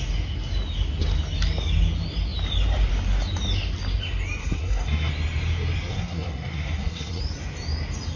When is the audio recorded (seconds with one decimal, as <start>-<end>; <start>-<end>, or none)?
0.0-4.4; 5.1-5.9; 7.2-8.2